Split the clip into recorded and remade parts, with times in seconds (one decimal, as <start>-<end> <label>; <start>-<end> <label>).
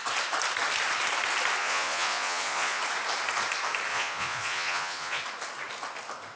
0.0-1.6 recorded; 1.6-2.8 remade; 2.8-3.9 recorded; 3.9-5.2 remade; 5.2-6.4 recorded